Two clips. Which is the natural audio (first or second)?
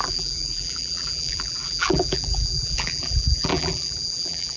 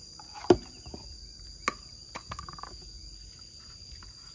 second